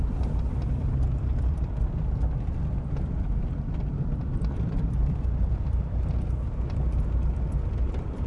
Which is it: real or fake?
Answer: fake